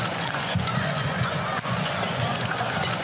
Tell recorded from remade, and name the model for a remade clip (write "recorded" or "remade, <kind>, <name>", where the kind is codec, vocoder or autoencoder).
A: remade, vocoder, Vocos